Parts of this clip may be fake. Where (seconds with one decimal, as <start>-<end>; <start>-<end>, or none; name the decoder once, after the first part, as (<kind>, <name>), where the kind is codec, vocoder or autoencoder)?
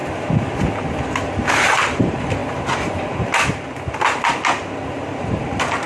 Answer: 1.8-2.4 (vocoder, BigVGAN v2); 5.2-5.9